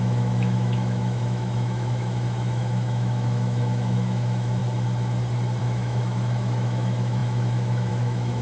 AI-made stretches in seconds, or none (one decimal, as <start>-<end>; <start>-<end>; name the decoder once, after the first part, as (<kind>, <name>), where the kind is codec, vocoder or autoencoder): 0.0-4.6 (autoencoder, DAC-VAE); 5.6-8.4